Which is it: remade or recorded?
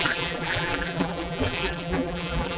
remade